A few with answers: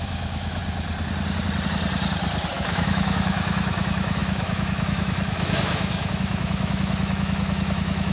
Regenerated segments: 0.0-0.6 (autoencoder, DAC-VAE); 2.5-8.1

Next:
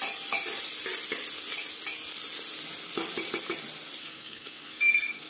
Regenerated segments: 4.0-5.3 (codec, SNAC)

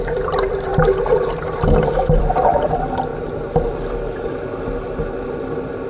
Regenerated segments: none

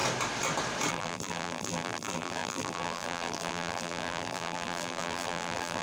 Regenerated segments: 0.9-5.8 (vocoder, BigVGAN v2)

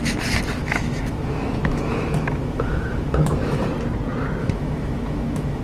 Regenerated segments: 0.6-3.7 (autoencoder, DAC-VAE); 4.4-5.6

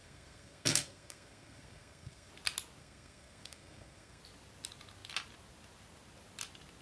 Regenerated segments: 0.0-2.3 (codec, SNAC); 2.8-4.2

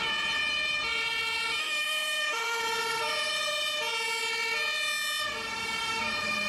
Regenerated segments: 1.6-2.6 (autoencoder, DAC-VAE)

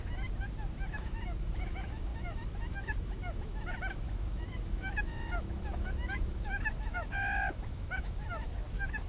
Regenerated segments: 0.9-9.1 (autoencoder, DAC-VAE)